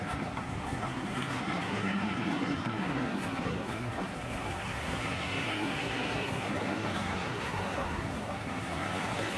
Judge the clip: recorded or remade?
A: remade